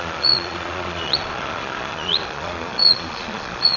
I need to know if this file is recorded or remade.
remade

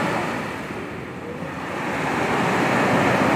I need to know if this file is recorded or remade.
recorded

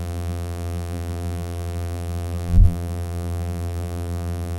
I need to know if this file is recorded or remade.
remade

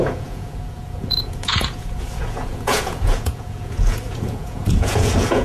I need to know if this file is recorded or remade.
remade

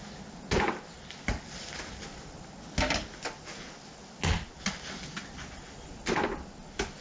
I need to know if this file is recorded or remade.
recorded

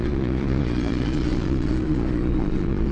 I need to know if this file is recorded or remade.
remade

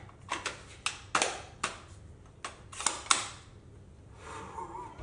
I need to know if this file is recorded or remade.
recorded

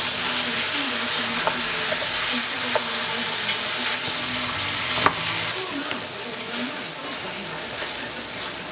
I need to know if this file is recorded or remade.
recorded